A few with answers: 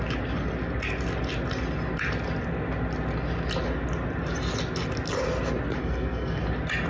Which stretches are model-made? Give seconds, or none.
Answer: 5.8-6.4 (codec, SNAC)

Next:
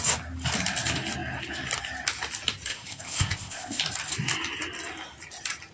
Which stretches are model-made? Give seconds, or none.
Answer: 2.7-3.8 (codec, ZipCodec)